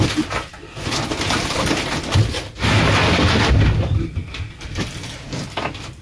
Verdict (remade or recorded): recorded